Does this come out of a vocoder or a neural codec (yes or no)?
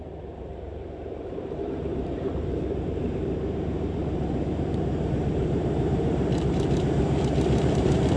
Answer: yes